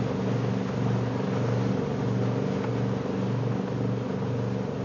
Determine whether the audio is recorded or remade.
recorded